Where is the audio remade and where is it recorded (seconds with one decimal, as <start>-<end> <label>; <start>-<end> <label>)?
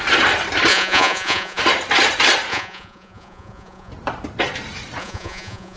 0.0-0.7 recorded; 0.7-1.6 remade; 1.6-2.5 recorded; 2.5-3.9 remade; 3.9-5.0 recorded; 5.0-5.8 remade